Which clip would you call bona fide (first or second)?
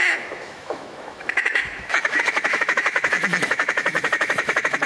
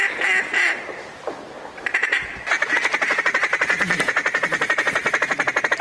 second